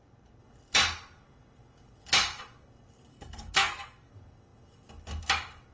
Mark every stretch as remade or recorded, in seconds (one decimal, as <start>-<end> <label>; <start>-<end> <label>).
0.0-3.1 recorded; 3.1-4.1 remade; 4.1-5.7 recorded